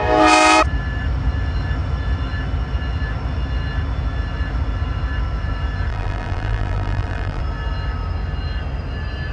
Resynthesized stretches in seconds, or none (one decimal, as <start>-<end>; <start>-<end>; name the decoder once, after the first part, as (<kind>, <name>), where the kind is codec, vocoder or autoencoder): 5.9-7.4 (vocoder, BigVGAN v2)